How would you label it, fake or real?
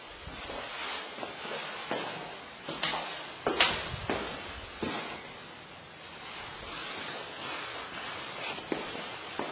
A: real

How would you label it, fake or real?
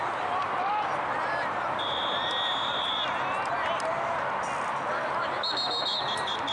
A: real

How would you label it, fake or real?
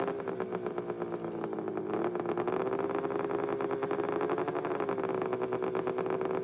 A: real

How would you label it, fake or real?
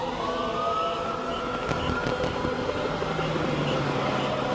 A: real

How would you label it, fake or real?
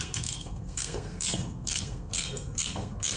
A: fake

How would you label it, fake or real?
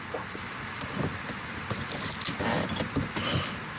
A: real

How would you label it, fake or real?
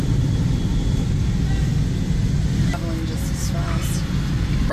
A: real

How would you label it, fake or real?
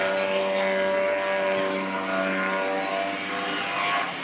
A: real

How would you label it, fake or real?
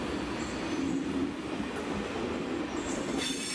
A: real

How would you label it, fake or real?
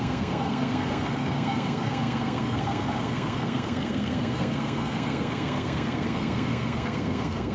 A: fake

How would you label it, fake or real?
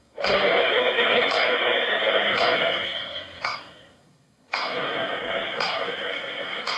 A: fake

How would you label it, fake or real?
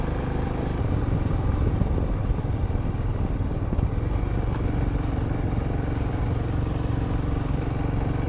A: real